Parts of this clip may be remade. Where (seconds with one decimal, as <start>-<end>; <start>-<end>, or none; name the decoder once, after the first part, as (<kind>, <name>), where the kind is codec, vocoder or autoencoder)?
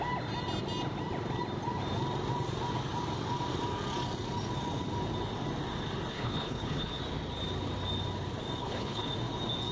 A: 6.1-7.0 (codec, HILCodec); 8.6-9.1